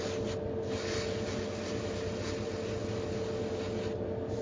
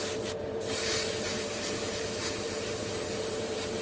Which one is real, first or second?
first